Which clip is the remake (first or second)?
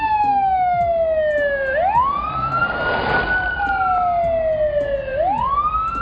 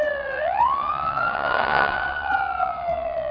second